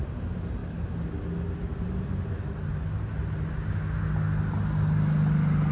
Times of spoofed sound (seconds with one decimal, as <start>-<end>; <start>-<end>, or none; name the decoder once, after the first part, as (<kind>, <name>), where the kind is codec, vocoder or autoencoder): none